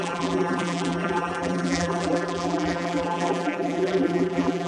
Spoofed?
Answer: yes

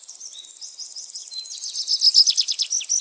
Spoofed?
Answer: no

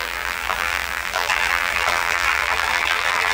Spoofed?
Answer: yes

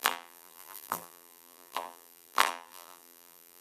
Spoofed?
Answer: yes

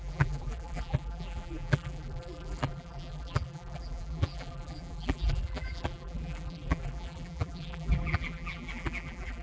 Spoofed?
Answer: yes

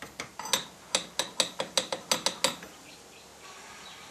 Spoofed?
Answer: no